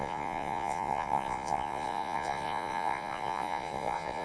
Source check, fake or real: fake